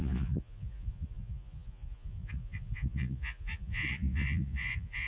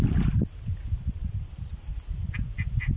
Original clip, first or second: second